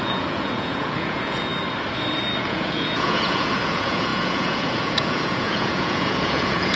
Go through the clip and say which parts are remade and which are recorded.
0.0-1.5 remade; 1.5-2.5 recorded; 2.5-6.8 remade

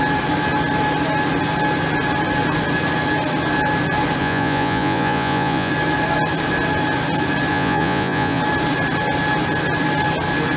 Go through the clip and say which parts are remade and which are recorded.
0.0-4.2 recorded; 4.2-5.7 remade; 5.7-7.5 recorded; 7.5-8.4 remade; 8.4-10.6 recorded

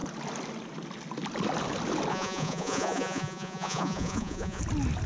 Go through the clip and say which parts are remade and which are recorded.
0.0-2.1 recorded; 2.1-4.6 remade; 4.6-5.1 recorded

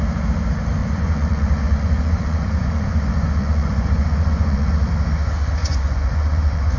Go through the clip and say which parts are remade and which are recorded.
0.0-0.8 recorded; 0.8-4.9 remade; 4.9-5.6 recorded; 5.6-6.8 remade

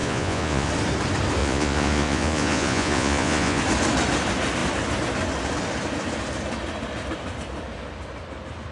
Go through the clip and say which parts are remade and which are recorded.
0.0-0.7 remade; 0.7-1.4 recorded; 1.4-3.6 remade; 3.6-8.7 recorded

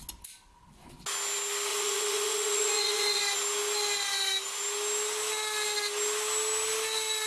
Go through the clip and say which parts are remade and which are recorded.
0.0-1.7 recorded; 1.7-3.2 remade; 3.2-7.3 recorded

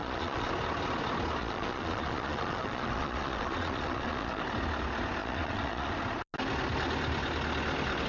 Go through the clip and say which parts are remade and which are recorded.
0.0-0.5 remade; 0.5-1.4 recorded; 1.4-4.4 remade; 4.4-5.2 recorded; 5.2-5.9 remade; 5.9-8.1 recorded

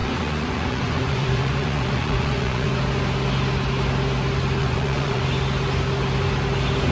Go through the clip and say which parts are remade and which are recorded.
0.0-2.8 remade; 2.8-4.6 recorded; 4.6-5.2 remade; 5.2-6.9 recorded